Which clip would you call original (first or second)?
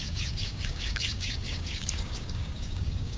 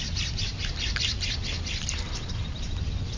second